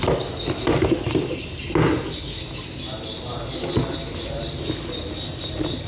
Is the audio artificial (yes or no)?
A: no